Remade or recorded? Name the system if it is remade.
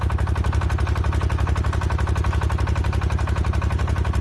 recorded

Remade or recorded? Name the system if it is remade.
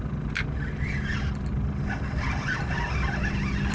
recorded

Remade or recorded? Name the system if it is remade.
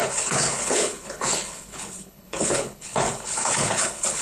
remade, codec, HILCodec